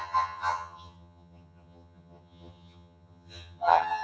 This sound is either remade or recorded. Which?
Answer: remade